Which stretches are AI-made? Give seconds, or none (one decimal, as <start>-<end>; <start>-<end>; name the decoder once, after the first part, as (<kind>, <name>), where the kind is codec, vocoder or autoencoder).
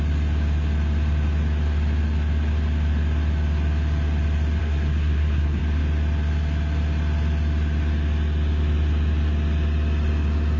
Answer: 4.6-5.6 (codec, SNAC)